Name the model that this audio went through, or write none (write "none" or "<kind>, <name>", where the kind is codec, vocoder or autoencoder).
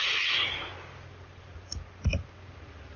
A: none